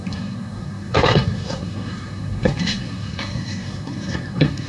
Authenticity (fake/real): fake